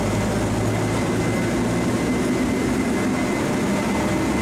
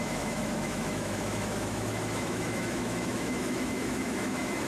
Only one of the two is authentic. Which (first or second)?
first